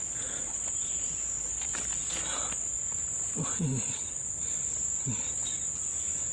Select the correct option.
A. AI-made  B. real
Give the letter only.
B